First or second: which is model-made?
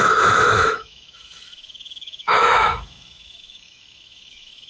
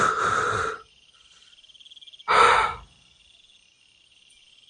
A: first